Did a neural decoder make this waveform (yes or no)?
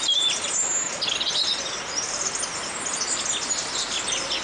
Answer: no